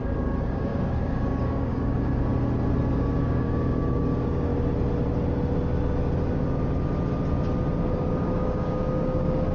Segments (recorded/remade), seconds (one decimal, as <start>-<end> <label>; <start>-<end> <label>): 0.0-2.3 remade; 2.3-2.9 recorded; 2.9-4.5 remade; 4.5-7.8 recorded; 7.8-9.5 remade